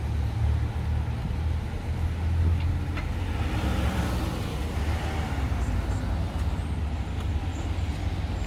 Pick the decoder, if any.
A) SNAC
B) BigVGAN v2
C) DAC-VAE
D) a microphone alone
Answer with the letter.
D